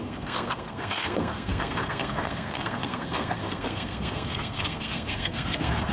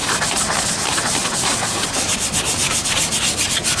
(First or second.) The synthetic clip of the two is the first